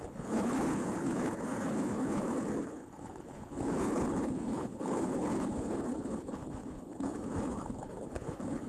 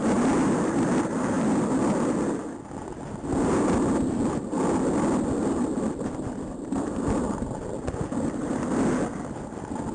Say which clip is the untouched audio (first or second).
second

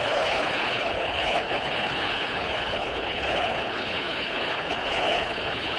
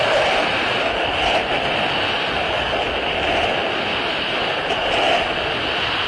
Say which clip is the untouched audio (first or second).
second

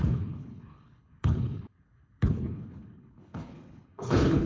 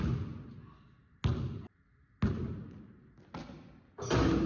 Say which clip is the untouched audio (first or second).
second